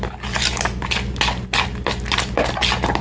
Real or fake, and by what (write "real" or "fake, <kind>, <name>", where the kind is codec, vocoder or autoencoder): real